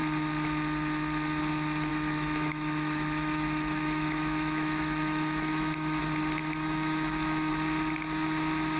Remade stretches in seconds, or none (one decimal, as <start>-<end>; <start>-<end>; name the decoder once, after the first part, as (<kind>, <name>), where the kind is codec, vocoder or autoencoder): 1.9-6.0 (autoencoder, DAC-VAE); 6.4-7.5